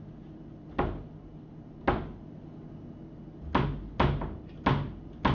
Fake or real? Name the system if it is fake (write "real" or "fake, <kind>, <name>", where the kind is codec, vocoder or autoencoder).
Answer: real